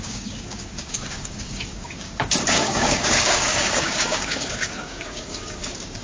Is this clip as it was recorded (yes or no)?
no